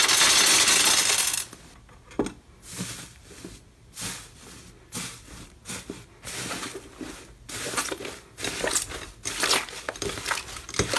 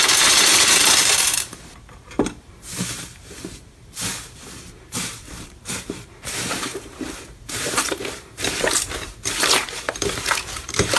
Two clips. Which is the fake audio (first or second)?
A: second